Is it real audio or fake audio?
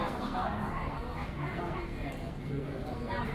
fake